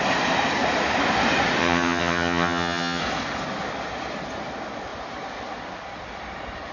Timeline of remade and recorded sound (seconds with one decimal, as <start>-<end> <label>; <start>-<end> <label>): 0.0-1.6 recorded; 1.6-3.0 remade; 3.0-6.7 recorded